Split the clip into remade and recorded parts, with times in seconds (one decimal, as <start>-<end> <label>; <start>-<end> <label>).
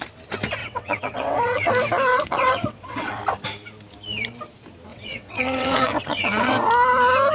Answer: 0.0-0.6 recorded; 0.6-1.7 remade; 1.7-2.1 recorded; 2.1-3.2 remade; 3.2-4.9 recorded; 4.9-6.5 remade; 6.5-7.3 recorded